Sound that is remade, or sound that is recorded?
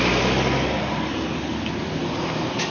recorded